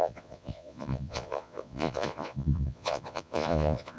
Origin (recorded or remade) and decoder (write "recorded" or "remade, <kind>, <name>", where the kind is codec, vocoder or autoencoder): remade, vocoder, Vocos